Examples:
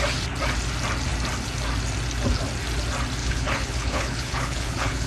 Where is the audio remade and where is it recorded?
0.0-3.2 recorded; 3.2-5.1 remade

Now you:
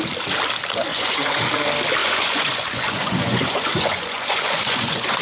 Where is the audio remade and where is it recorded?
0.0-0.9 recorded; 0.9-1.4 remade; 1.4-2.0 recorded; 2.0-5.2 remade

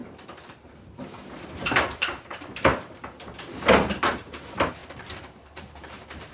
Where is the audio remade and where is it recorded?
0.0-1.4 recorded; 1.4-6.3 remade

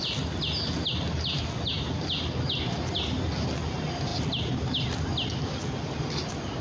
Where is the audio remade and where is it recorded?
0.0-6.6 recorded

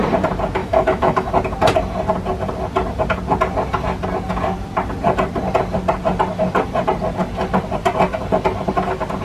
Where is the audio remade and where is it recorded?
0.0-0.6 recorded; 0.6-1.3 remade; 1.3-9.2 recorded

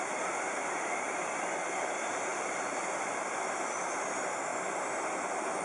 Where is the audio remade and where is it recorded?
0.0-2.3 recorded; 2.3-3.1 remade; 3.1-5.6 recorded

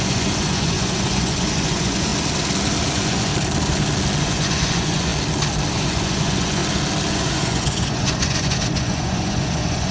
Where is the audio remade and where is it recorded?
0.0-2.1 remade; 2.1-2.9 recorded; 2.9-3.3 remade; 3.3-4.2 recorded; 4.2-5.1 remade; 5.1-5.7 recorded; 5.7-6.6 remade; 6.6-7.1 recorded; 7.1-9.9 remade